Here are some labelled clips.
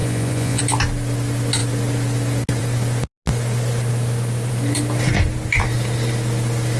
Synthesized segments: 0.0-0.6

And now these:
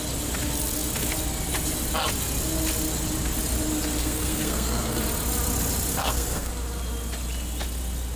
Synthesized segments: 4.0-5.0; 5.9-6.5